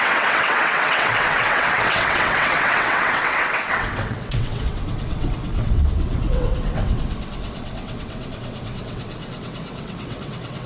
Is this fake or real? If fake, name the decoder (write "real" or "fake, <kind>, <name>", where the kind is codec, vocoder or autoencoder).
fake, vocoder, WaveNeXt